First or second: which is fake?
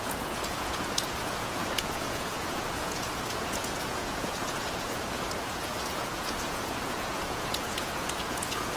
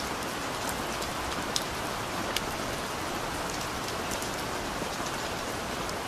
first